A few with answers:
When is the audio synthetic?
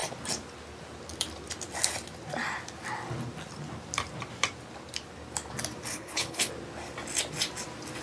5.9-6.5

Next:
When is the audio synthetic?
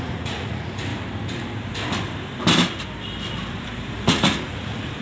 0.0-0.9; 3.9-5.0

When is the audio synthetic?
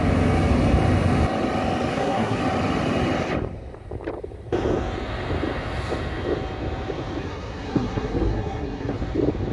1.9-2.4; 7.2-9.0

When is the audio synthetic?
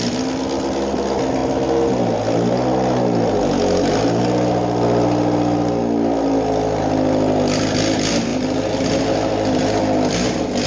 none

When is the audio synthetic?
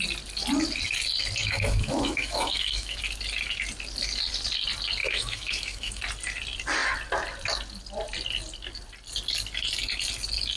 1.4-3.0; 5.0-6.0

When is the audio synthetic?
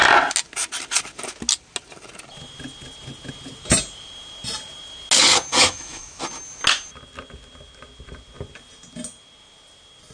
5.5-6.2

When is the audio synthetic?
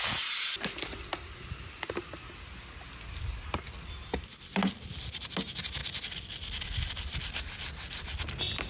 none